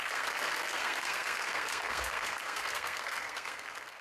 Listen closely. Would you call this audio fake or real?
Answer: fake